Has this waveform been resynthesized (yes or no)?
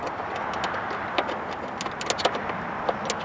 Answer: no